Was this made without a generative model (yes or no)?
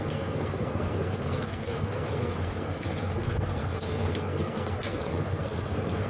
no